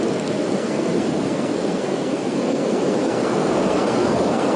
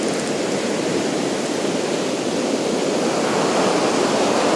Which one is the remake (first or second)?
first